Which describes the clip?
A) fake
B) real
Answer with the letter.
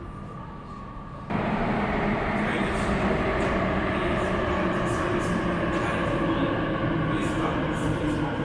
B